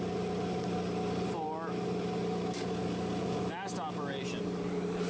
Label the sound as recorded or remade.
recorded